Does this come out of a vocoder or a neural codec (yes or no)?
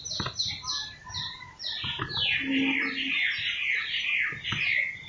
no